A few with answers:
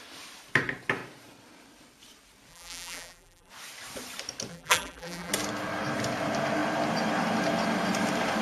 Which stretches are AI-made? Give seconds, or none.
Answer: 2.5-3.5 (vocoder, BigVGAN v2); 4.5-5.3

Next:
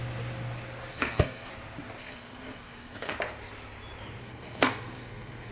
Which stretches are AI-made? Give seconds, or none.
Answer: 0.9-1.5 (codec, SNAC); 2.0-3.1; 4.2-5.5

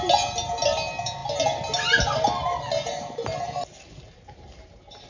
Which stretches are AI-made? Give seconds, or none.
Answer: none

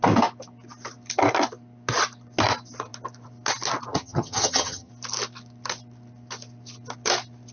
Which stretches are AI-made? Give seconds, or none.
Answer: 3.9-4.9 (vocoder, HiFi-GAN)

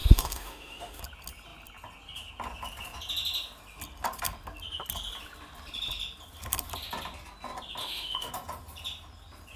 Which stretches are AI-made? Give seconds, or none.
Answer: 0.0-1.0 (autoencoder, DAC-VAE); 7.8-8.3